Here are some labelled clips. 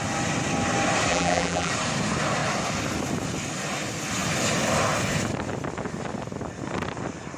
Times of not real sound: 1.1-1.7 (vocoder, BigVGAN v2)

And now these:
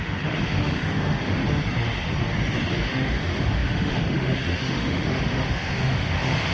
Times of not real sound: 0.0-1.4 (autoencoder, DAC-VAE); 2.7-6.5

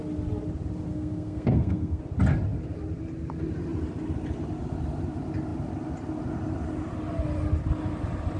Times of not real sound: 0.9-2.0 (codec, SNAC)

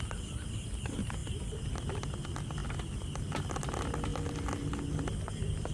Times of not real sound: none

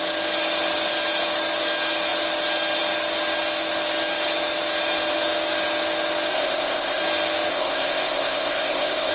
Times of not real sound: 6.3-7.0 (codec, ZipCodec); 7.5-9.1

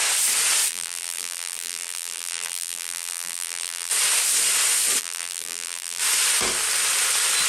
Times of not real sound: 0.7-3.9 (vocoder, BigVGAN v2); 5.0-6.0